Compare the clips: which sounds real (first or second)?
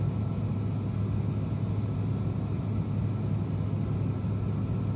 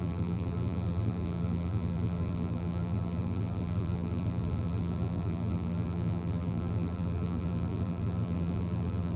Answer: first